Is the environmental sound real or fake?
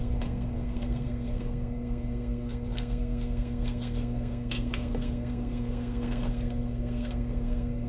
fake